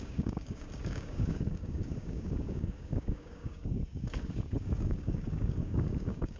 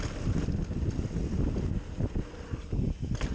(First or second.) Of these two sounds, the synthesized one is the first